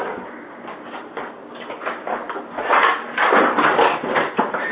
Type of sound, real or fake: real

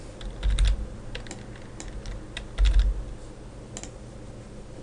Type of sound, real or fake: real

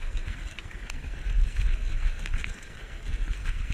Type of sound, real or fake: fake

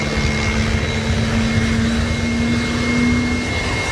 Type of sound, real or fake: real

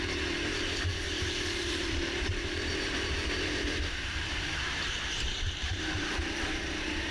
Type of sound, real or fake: fake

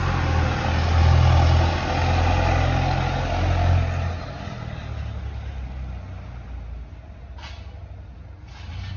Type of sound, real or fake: real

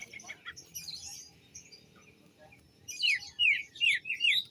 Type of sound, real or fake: fake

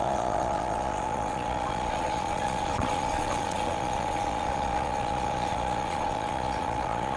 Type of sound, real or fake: fake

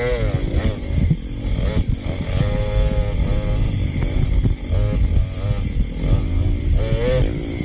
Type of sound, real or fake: real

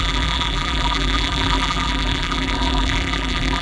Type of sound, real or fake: fake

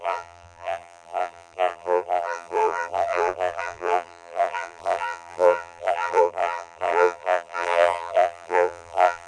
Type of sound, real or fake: fake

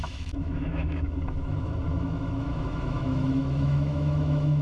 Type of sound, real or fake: fake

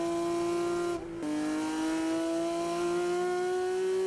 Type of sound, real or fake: real